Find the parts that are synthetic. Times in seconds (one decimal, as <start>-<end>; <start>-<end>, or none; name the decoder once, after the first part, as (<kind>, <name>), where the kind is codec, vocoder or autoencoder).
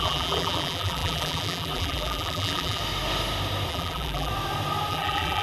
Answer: 0.0-2.8 (vocoder, BigVGAN v2); 3.7-4.3; 4.9-5.4